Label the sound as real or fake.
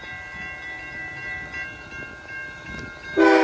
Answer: real